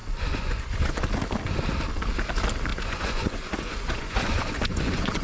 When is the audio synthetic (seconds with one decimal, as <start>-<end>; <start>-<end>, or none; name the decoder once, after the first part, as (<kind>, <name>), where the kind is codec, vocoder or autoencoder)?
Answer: 0.0-1.0 (vocoder, Vocos); 2.7-5.2